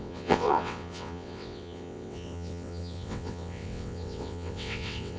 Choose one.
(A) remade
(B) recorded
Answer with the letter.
A